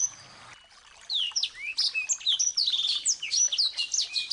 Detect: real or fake real